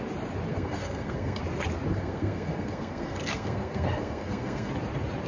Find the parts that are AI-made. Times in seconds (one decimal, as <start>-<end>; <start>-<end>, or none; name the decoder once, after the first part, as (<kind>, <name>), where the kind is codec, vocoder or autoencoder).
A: 0.5-1.4 (codec, SNAC); 1.9-4.7